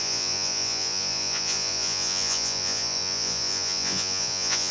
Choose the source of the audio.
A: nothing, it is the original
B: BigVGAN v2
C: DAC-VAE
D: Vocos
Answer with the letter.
D